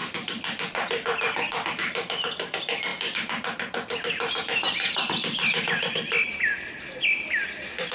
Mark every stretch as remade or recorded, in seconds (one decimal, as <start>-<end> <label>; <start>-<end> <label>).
0.0-7.9 recorded